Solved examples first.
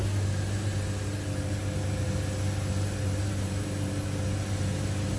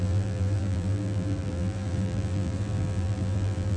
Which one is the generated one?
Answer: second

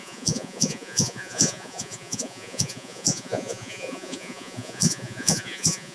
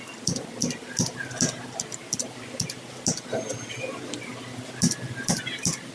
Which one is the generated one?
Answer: first